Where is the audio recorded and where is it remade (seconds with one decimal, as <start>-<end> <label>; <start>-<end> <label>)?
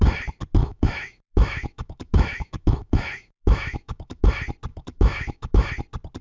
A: 0.0-0.6 recorded; 0.6-4.3 remade; 4.3-4.7 recorded; 4.7-5.7 remade; 5.7-6.2 recorded